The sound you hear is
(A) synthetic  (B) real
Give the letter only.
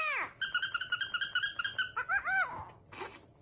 B